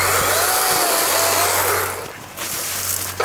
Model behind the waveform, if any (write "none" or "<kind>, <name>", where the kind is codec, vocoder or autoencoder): none